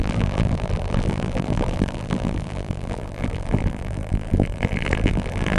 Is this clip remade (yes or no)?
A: yes